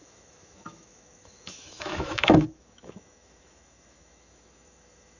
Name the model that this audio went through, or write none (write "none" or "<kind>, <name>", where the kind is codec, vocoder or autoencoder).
autoencoder, DAC-VAE